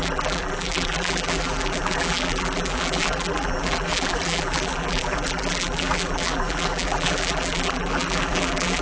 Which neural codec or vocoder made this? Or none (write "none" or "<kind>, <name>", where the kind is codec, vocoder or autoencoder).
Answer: vocoder, BigVGAN v2